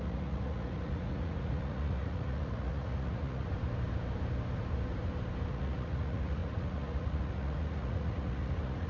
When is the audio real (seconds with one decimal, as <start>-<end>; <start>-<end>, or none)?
3.5-5.5